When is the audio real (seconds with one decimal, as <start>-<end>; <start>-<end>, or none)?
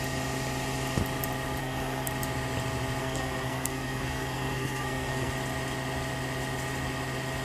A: 0.0-1.6; 2.1-3.0; 5.3-7.4